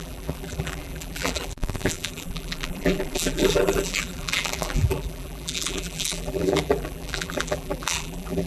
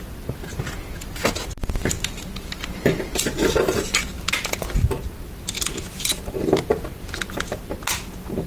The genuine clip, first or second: second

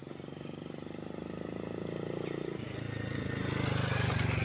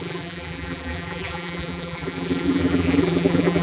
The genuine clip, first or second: first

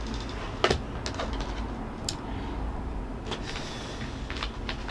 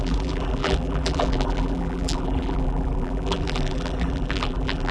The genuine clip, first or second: first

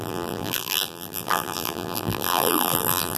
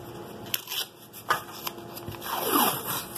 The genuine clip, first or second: second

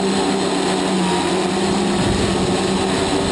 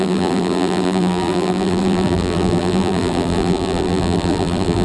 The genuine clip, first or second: first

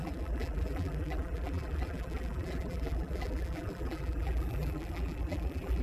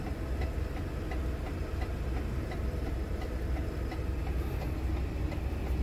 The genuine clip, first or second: second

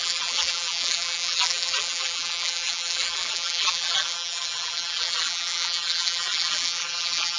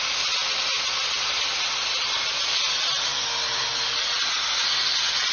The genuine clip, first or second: second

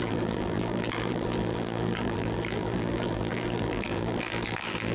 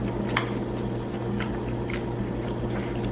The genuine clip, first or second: second